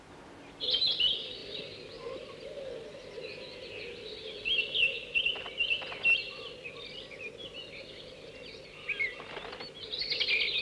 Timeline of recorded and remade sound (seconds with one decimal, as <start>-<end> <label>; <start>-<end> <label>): 0.0-10.6 recorded